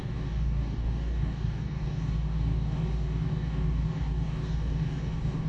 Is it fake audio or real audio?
fake